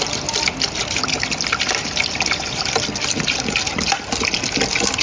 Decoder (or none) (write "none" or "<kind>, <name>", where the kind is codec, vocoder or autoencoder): none